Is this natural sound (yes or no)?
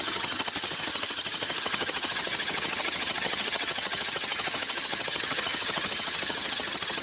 no